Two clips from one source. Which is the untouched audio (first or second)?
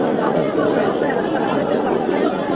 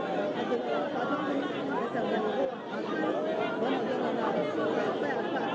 second